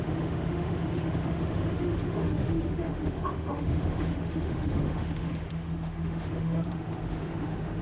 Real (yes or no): no